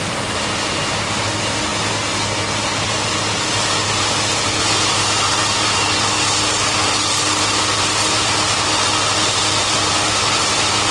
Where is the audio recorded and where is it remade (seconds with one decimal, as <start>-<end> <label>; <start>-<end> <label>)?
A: 0.0-10.9 recorded